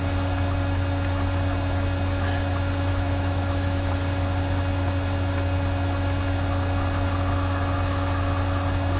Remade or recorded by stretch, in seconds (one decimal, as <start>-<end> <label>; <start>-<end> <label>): 0.0-2.9 recorded; 2.9-3.9 remade; 3.9-9.0 recorded